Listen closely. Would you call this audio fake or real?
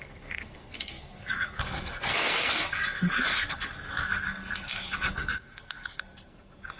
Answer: fake